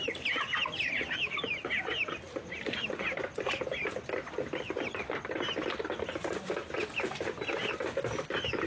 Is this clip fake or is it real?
real